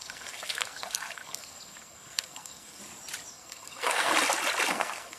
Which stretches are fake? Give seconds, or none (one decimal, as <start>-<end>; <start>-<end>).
0.0-2.8; 3.3-4.1; 4.7-5.2